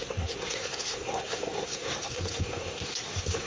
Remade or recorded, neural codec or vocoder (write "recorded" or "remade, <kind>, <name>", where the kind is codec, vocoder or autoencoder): remade, codec, SNAC